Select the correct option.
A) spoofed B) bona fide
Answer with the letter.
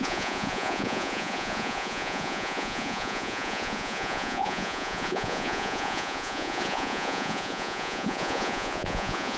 A